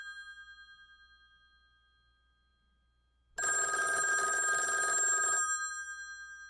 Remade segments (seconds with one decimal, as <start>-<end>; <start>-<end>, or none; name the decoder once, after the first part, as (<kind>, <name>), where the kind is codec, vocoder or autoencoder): none